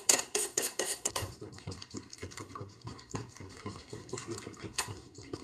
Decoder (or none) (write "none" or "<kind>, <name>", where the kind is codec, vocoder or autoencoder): codec, SNAC